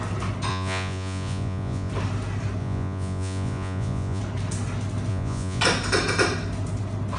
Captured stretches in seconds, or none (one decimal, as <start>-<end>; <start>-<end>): 0.0-0.5; 1.9-2.6; 4.2-5.1; 5.6-7.2